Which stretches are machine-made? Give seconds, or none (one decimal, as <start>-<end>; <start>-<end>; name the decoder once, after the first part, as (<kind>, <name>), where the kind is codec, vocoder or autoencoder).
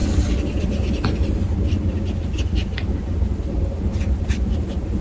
none